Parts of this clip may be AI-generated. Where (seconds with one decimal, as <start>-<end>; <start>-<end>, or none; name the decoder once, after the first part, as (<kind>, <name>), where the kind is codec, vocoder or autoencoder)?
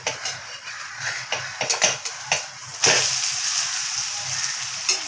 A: 0.4-1.3 (vocoder, Vocos)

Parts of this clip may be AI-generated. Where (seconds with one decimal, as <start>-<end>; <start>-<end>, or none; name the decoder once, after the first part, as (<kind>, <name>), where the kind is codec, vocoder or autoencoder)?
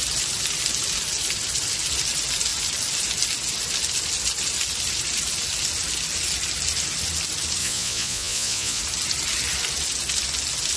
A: 7.6-8.8 (vocoder, Vocos)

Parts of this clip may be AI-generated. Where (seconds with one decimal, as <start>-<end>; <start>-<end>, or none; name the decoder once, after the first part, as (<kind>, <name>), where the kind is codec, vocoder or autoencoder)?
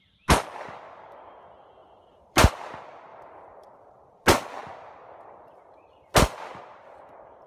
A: 1.8-2.5 (vocoder, BigVGAN v2)